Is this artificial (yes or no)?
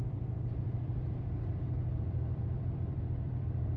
yes